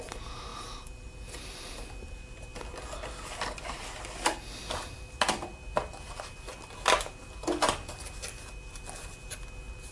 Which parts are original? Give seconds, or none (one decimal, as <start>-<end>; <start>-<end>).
0.0-9.9